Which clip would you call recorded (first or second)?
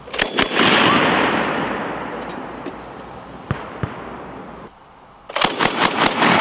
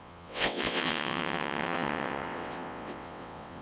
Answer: first